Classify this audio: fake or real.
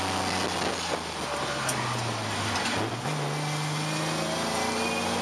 real